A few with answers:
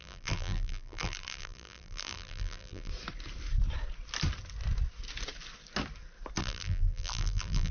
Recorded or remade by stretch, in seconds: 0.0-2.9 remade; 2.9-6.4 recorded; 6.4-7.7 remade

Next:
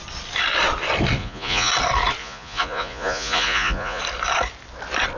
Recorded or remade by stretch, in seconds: 0.0-1.2 recorded; 1.2-1.7 remade; 1.7-2.2 recorded; 2.2-4.0 remade; 4.0-5.2 recorded

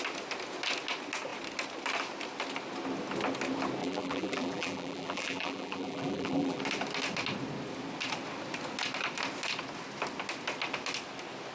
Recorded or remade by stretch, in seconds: 0.0-3.8 recorded; 3.8-6.6 remade; 6.6-11.5 recorded

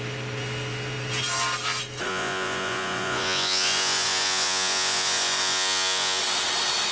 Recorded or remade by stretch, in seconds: 0.0-2.1 recorded; 2.1-6.2 remade; 6.2-6.9 recorded

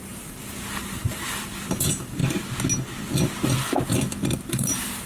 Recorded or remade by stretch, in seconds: 0.0-2.2 remade; 2.2-4.5 recorded; 4.5-5.1 remade